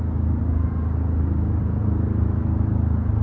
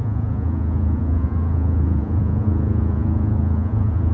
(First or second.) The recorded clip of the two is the first